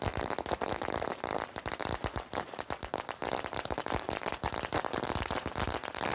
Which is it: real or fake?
fake